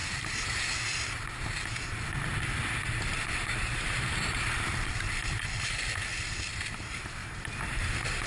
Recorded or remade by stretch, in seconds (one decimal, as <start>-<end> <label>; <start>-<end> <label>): 0.0-1.6 remade; 1.6-3.1 recorded; 3.1-5.2 remade; 5.2-7.2 recorded; 7.2-7.9 remade; 7.9-8.3 recorded